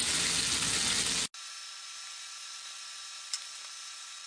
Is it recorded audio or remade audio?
recorded